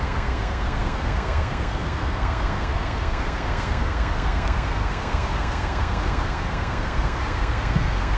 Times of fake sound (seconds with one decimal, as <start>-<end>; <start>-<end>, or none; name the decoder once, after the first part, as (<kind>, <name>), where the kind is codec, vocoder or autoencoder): 0.0-8.2 (codec, SNAC)